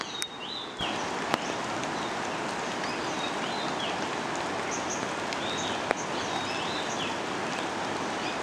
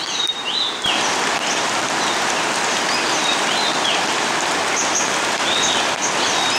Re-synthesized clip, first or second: second